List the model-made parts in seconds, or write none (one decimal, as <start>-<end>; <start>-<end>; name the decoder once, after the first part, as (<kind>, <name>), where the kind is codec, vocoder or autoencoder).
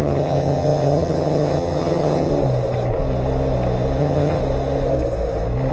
0.0-2.3 (vocoder, HiFi-GAN); 4.0-4.4